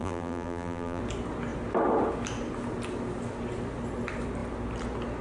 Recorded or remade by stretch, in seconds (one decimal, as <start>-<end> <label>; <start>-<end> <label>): 0.0-1.0 remade; 1.0-5.2 recorded